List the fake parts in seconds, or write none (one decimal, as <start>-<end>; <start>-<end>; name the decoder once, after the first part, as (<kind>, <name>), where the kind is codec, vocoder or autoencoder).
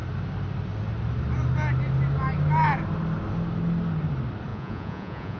4.5-5.4 (vocoder, Vocos)